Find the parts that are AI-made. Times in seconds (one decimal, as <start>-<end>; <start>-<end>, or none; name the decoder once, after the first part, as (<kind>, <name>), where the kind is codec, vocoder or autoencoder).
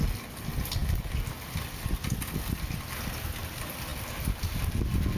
none